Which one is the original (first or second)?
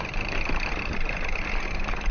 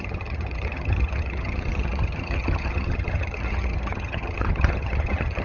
first